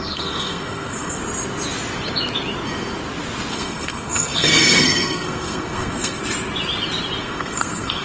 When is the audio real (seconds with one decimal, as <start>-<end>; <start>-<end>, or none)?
1.2-3.5; 6.2-7.2